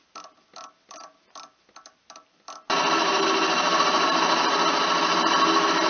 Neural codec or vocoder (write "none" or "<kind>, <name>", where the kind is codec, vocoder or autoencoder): none